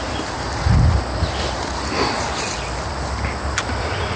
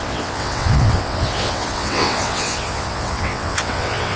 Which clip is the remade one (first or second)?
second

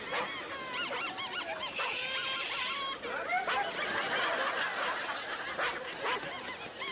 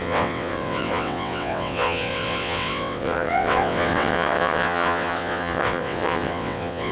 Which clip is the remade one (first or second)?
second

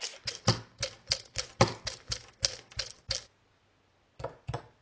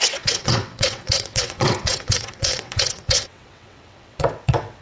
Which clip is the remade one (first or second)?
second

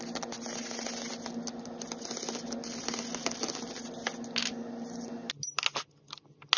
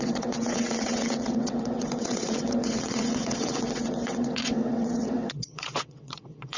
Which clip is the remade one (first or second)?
second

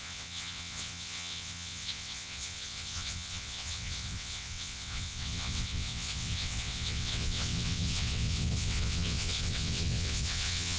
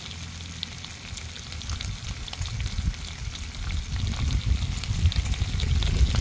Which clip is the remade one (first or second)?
first